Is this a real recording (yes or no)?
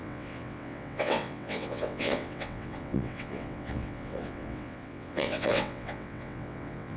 no